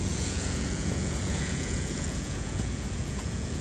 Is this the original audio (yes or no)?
no